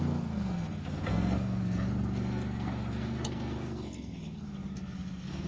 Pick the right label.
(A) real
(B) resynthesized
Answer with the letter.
B